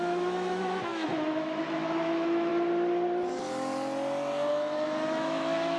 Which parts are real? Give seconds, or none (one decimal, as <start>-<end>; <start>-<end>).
2.5-4.5